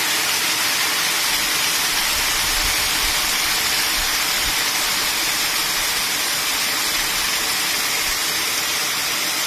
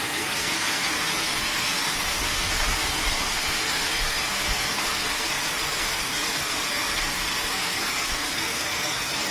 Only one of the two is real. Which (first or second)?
first